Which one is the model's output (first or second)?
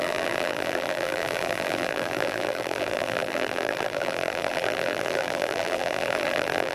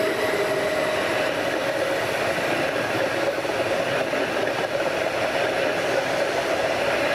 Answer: first